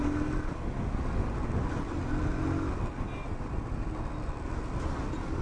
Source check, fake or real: real